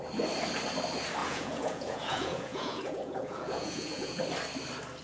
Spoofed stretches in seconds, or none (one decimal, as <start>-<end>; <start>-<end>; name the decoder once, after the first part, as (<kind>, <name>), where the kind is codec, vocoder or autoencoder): 1.2-4.2 (vocoder, Vocos)